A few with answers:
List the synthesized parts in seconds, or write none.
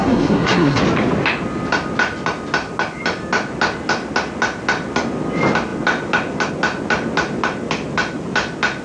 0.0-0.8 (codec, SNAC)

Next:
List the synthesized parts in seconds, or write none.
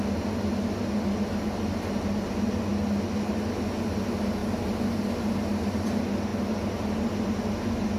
none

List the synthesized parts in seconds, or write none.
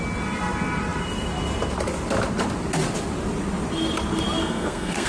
4.4-5.1 (codec, SNAC)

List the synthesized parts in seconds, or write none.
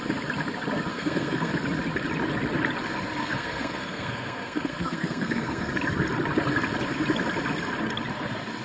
0.9-1.5 (codec, SNAC); 3.2-5.7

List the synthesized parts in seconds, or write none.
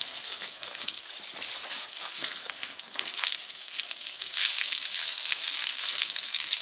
0.0-1.1 (codec, SNAC); 1.7-6.6